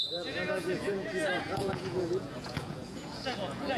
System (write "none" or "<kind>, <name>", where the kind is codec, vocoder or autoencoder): vocoder, Vocos